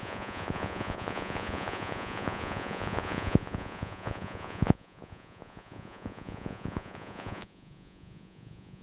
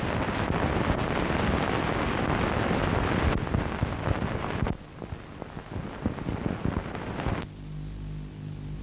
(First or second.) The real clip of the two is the second